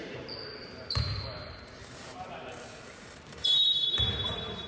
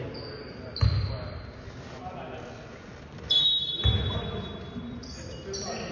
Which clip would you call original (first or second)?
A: second